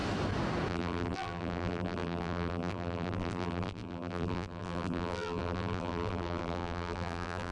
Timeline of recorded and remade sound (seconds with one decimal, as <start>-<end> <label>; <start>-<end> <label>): 0.0-0.7 recorded; 0.7-7.5 remade